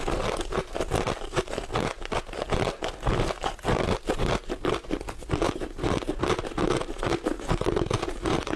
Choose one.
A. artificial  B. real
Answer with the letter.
B